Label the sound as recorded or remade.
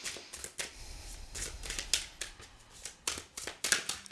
recorded